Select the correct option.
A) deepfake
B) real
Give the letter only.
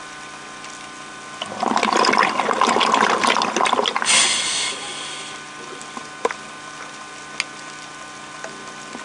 B